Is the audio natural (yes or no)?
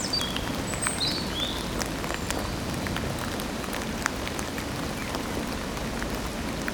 yes